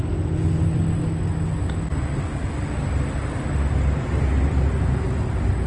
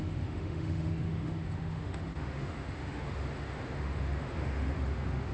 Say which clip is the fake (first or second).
second